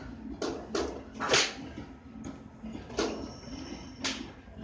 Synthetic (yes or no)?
no